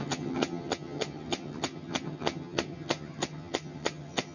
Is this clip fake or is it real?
fake